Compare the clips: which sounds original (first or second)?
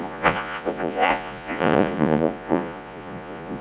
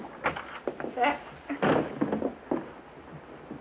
second